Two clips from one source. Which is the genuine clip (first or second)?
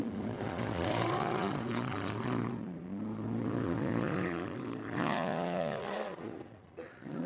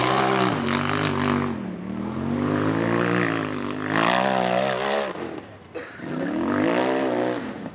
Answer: second